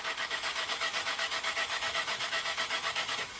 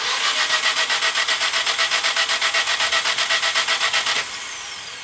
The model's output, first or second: first